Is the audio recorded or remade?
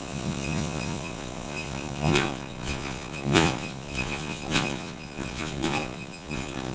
remade